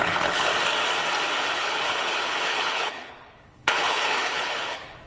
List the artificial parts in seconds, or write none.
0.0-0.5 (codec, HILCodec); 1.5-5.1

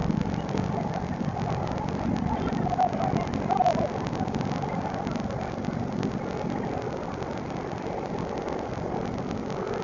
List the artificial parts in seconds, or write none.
none

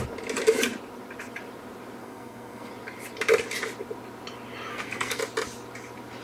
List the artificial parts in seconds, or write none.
2.0-2.7 (codec, SNAC); 4.7-5.2

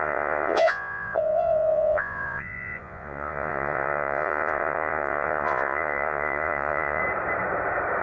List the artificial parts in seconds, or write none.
0.0-7.0 (vocoder, Vocos)

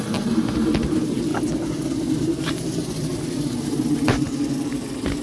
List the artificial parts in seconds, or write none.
none

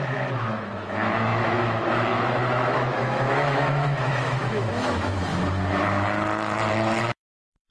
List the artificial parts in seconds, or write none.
0.0-5.3 (autoencoder, DAC-VAE); 7.0-7.7